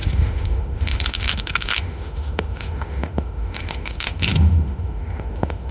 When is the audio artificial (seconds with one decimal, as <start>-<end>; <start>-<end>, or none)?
0.0-5.7